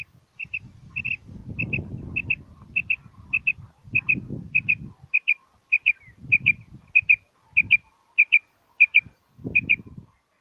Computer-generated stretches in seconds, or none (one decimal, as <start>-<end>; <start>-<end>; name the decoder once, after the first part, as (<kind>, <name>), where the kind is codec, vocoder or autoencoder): none